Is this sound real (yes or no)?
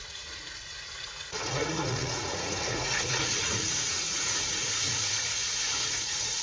no